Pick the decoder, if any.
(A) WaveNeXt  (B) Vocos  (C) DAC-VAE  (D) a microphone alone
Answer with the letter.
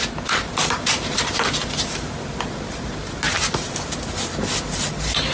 D